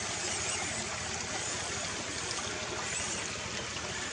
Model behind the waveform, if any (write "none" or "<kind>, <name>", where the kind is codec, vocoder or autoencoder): none